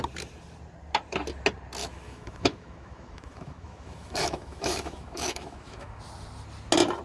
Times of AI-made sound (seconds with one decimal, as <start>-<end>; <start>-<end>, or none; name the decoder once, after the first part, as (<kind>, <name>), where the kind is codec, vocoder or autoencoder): 1.8-6.0 (autoencoder, DAC-VAE)